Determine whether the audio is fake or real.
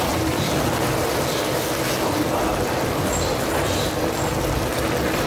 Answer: real